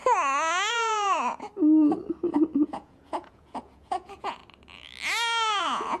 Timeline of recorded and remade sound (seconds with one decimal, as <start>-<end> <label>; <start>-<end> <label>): 0.0-0.7 recorded; 0.7-1.5 remade; 1.5-2.7 recorded; 2.7-4.4 remade; 4.4-5.6 recorded; 5.6-6.0 remade